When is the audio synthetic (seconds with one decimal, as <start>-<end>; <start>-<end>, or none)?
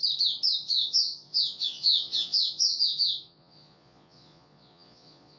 0.6-5.4